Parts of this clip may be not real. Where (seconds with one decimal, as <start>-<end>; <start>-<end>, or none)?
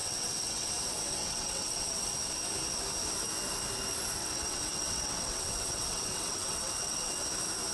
0.0-0.7; 1.2-2.0; 4.2-7.2